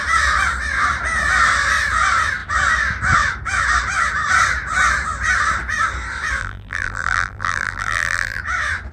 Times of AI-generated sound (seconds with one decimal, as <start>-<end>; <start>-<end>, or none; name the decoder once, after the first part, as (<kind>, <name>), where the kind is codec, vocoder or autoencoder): 6.4-8.4 (vocoder, BigVGAN v2)